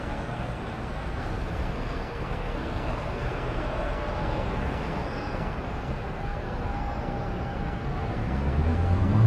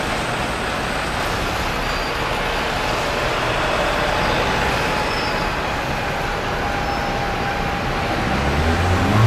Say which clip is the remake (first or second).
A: first